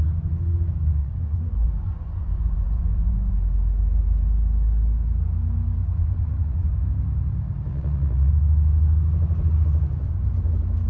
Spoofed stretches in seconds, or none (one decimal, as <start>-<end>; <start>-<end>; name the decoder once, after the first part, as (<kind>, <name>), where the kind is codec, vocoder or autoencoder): 1.0-3.3 (vocoder, Vocos); 5.9-6.7; 7.7-8.3